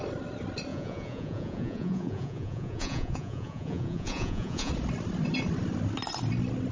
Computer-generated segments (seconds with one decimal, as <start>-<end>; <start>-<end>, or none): 0.7-4.7